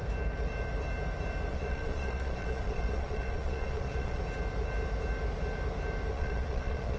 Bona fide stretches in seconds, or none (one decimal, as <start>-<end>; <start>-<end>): 0.0-1.5; 4.2-6.1